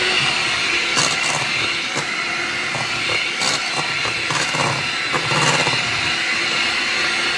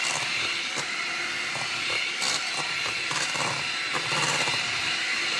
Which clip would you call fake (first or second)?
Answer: second